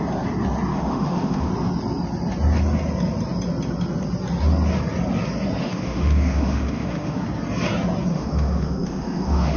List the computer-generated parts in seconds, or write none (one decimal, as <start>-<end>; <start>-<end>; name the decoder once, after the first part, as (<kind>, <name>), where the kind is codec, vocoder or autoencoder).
0.7-1.5 (autoencoder, DAC-VAE); 5.6-7.2; 8.1-9.6